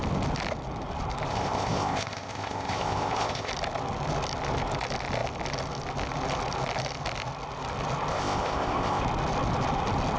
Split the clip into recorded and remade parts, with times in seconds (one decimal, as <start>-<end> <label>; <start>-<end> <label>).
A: 0.0-1.3 recorded; 1.3-3.5 remade; 3.5-8.1 recorded; 8.1-9.0 remade; 9.0-10.2 recorded

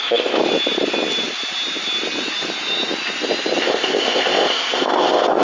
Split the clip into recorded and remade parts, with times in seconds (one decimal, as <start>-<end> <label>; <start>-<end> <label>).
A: 0.0-0.4 remade; 0.4-3.6 recorded; 3.6-5.4 remade

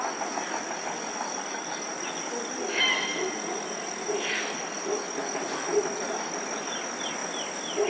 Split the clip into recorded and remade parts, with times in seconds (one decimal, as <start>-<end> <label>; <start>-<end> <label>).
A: 0.0-7.9 recorded

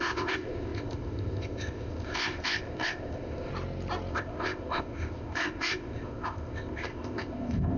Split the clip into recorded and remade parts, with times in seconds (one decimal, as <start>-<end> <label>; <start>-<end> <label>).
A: 0.0-3.5 remade; 3.5-4.1 recorded; 4.1-7.8 remade

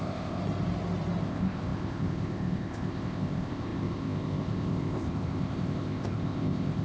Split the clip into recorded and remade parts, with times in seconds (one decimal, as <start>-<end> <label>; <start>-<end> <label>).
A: 0.0-0.4 remade; 0.4-1.2 recorded; 1.2-6.8 remade

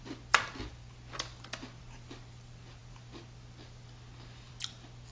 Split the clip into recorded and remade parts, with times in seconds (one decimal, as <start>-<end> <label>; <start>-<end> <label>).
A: 0.0-5.1 recorded

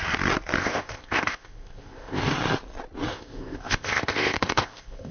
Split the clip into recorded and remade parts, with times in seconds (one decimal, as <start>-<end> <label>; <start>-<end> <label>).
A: 0.0-0.6 recorded; 0.6-2.2 remade; 2.2-3.1 recorded; 3.1-5.1 remade

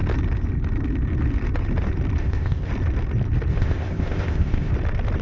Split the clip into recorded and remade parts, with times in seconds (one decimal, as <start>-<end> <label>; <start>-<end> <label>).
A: 0.0-2.2 recorded; 2.2-2.7 remade; 2.7-3.5 recorded; 3.5-4.7 remade; 4.7-5.2 recorded